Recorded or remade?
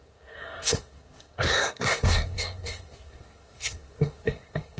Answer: remade